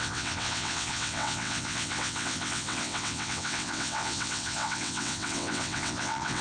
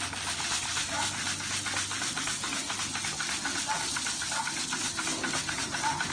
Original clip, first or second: second